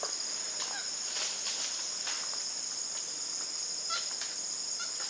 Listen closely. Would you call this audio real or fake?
real